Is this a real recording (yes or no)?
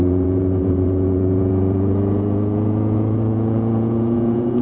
no